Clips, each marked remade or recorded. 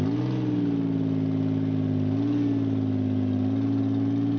recorded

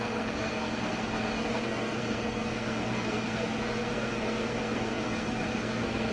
remade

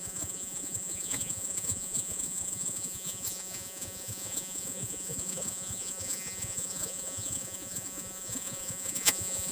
remade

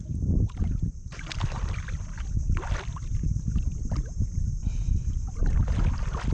recorded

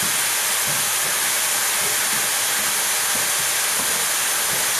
recorded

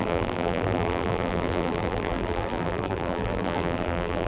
remade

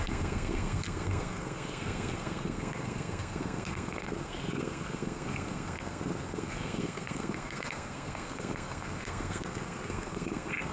remade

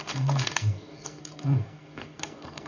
remade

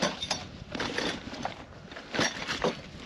recorded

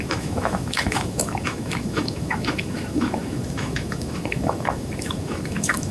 remade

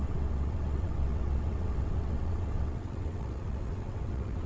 remade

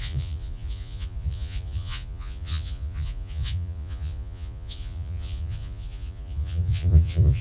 remade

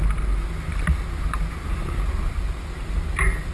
recorded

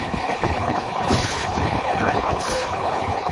remade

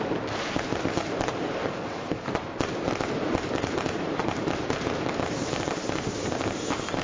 remade